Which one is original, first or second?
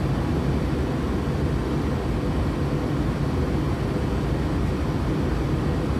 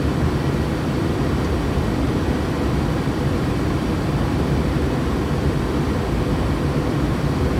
first